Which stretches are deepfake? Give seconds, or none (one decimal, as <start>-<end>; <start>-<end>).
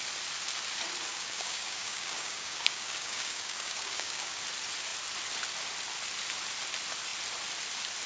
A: 1.1-4.4